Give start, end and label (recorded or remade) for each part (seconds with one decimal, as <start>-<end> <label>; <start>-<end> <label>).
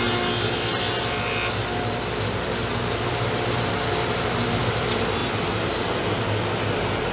0.0-7.1 recorded